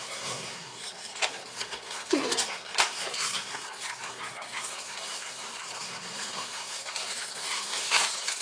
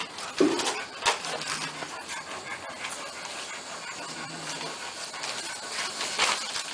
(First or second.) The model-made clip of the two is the first